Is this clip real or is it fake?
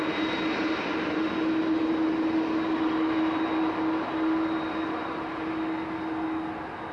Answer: real